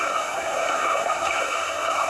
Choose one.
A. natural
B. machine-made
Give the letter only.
B